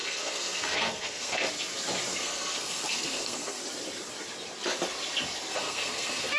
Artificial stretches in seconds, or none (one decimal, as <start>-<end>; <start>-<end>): 0.0-1.5; 2.1-3.6; 5.5-6.4